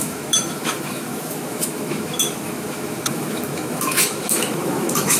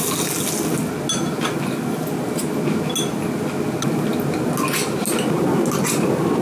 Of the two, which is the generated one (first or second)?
first